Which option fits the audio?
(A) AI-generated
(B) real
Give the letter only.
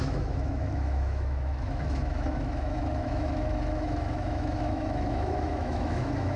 A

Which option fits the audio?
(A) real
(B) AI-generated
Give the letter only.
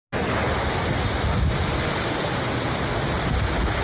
A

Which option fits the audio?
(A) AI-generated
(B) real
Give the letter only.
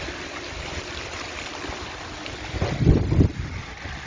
B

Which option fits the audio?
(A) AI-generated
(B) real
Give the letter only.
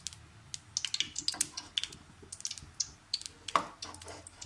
B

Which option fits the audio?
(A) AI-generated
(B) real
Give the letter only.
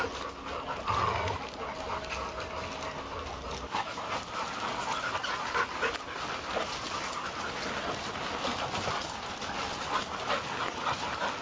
B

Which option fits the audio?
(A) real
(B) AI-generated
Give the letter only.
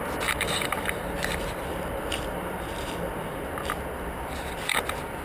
B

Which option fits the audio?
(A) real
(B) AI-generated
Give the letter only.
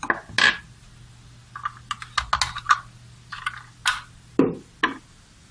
A